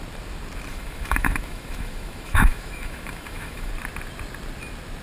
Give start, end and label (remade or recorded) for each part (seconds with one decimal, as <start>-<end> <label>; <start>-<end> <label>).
0.0-0.7 recorded; 0.7-3.7 remade; 3.7-5.0 recorded